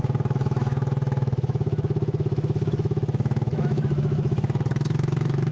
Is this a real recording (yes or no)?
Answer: no